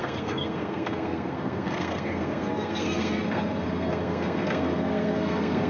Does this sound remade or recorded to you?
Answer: remade